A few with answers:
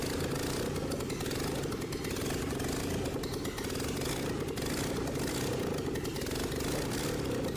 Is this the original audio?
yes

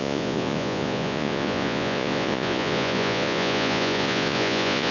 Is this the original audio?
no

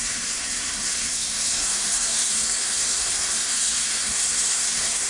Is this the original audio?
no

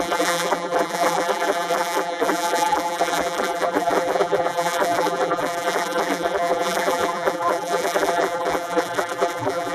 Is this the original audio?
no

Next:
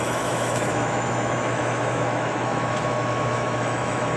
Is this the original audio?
no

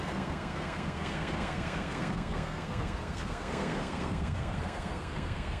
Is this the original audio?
no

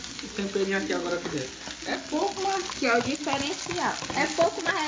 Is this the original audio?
yes